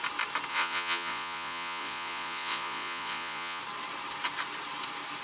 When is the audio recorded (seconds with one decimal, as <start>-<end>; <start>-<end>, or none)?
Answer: 0.0-0.5; 3.6-5.2